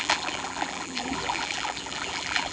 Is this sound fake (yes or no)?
yes